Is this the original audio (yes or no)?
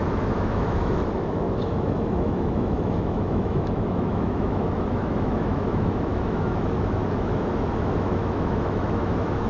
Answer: no